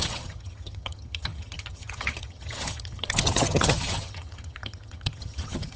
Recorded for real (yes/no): no